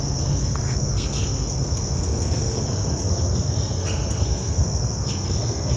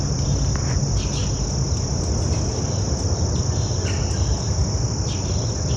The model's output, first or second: first